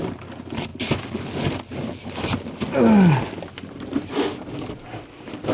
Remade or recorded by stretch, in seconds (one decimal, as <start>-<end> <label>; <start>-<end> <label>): 0.0-5.5 recorded

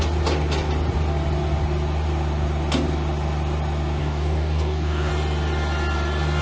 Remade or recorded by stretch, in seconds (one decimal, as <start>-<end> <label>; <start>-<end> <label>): 0.0-4.0 recorded; 4.0-5.1 remade; 5.1-6.4 recorded

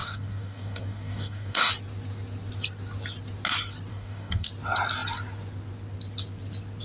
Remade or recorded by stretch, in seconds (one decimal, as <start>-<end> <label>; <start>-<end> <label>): 0.0-1.7 remade; 1.7-3.9 recorded; 3.9-4.5 remade; 4.5-6.8 recorded

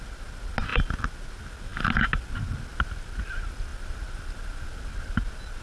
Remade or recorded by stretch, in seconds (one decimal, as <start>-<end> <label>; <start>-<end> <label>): 0.0-5.6 recorded

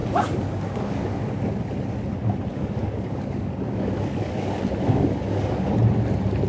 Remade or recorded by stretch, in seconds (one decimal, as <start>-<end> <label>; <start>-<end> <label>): 0.0-1.5 remade; 1.5-2.5 recorded; 2.5-5.8 remade; 5.8-6.5 recorded

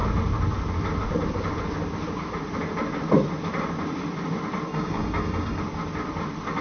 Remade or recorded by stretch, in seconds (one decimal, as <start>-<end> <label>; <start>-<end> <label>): 0.0-4.7 recorded; 4.7-5.6 remade; 5.6-6.6 recorded